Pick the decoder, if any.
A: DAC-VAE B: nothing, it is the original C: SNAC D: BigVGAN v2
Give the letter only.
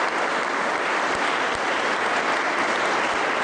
B